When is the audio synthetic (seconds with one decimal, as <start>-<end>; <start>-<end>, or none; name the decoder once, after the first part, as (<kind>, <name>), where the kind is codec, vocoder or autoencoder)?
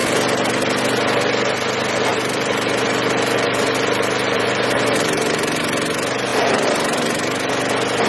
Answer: 2.1-5.6 (vocoder, BigVGAN v2); 6.3-7.5